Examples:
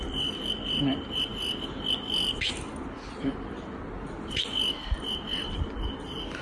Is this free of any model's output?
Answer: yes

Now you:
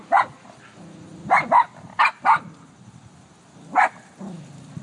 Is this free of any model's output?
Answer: yes